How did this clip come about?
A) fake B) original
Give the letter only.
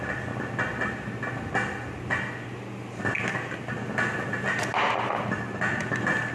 B